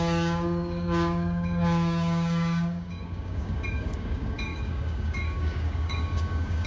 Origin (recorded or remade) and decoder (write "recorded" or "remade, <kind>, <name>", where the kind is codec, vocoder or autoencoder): remade, codec, DAC